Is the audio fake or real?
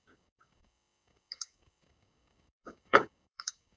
fake